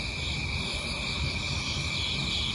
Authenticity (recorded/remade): recorded